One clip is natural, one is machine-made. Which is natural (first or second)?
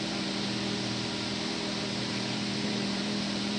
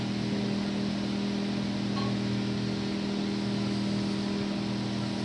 second